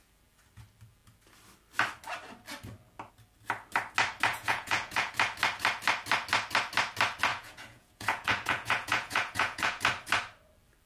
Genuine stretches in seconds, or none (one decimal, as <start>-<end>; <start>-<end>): 0.0-4.3; 5.1-7.3; 9.8-10.9